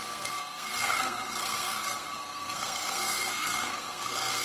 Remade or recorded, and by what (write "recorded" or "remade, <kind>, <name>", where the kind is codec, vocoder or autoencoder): remade, codec, SNAC